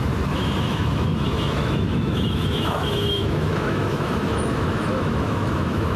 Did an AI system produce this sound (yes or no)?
yes